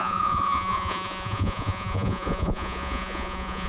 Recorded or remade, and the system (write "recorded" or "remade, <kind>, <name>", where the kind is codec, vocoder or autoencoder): remade, vocoder, Vocos